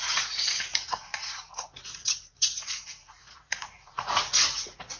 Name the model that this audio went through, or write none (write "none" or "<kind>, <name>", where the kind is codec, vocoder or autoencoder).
vocoder, Vocos